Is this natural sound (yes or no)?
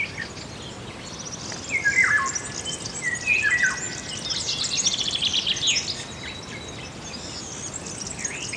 yes